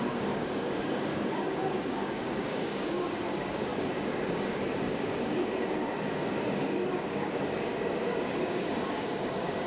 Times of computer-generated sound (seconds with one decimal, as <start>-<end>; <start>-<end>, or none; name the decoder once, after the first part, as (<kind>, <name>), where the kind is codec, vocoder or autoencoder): 0.0-9.7 (codec, DAC)